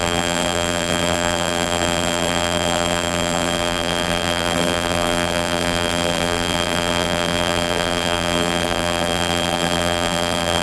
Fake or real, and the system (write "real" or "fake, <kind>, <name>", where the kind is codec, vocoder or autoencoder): fake, vocoder, BigVGAN v2